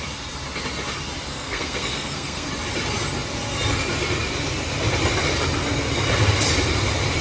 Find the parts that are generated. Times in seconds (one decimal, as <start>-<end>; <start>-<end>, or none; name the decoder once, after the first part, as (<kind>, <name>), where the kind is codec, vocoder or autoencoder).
1.3-2.5 (codec, SNAC)